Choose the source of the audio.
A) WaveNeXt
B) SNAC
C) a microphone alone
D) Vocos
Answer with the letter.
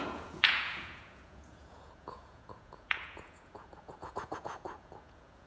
D